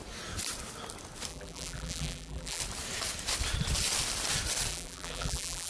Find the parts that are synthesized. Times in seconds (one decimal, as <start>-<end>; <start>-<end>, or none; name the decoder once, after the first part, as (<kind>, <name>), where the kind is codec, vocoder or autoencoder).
1.3-2.6 (vocoder, BigVGAN v2); 4.7-5.7